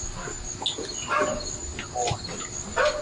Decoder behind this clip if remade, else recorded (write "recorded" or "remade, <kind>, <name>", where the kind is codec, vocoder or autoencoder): recorded